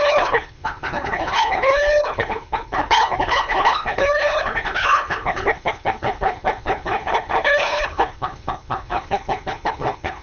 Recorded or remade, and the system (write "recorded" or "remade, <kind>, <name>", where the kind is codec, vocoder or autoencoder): remade, codec, HILCodec